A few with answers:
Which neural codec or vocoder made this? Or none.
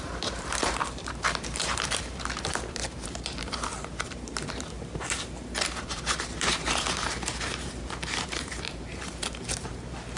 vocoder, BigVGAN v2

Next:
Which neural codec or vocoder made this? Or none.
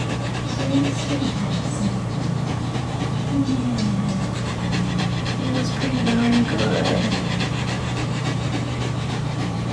vocoder, BigVGAN v2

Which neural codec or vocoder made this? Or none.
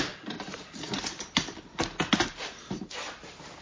none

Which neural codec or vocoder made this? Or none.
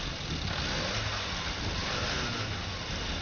none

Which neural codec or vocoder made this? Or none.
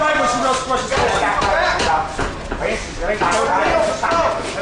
none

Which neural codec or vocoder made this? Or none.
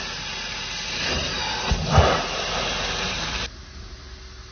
none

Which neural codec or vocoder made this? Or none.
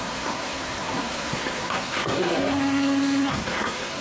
codec, SNAC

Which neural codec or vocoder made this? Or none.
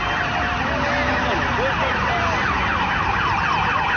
none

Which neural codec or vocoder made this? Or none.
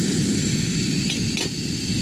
none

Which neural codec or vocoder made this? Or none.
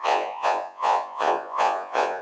vocoder, Vocos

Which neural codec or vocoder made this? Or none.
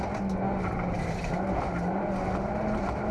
none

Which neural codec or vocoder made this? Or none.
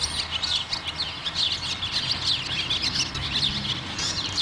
none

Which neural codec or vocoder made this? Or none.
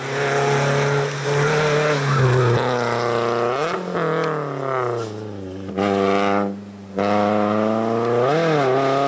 none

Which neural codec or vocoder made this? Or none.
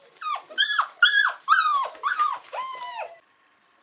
none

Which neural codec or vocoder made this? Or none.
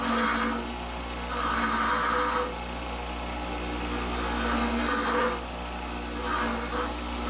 none